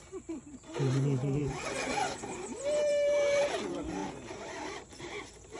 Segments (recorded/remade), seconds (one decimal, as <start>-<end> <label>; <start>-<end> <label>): 0.0-5.6 remade